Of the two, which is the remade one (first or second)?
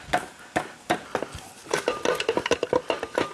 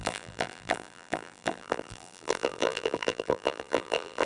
second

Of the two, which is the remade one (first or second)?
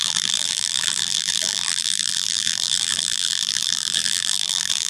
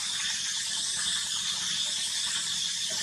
first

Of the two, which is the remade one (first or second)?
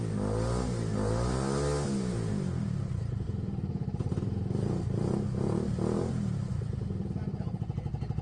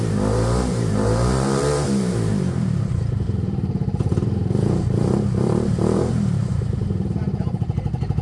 second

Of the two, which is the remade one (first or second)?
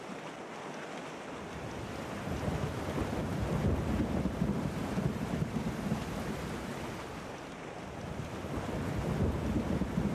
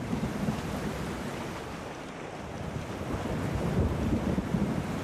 second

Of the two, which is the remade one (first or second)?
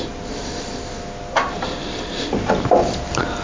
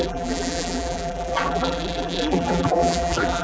second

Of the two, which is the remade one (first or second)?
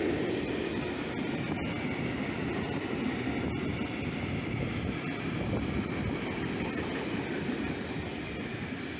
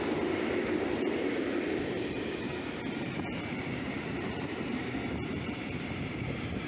second